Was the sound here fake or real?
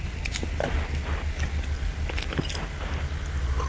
real